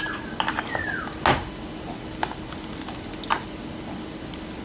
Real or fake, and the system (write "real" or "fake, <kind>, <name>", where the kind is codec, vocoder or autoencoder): real